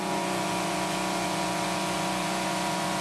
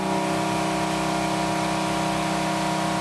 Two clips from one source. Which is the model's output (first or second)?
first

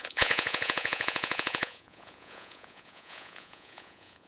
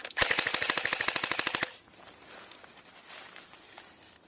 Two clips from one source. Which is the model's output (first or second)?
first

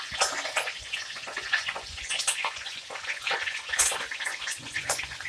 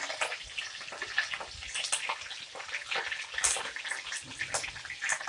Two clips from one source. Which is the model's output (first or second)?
first